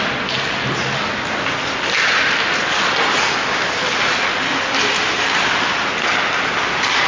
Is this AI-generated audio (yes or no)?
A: no